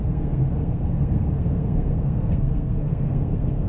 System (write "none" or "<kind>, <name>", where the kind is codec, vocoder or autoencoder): codec, SNAC